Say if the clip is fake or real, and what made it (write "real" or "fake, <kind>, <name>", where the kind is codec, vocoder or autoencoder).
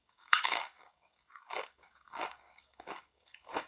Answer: fake, codec, DAC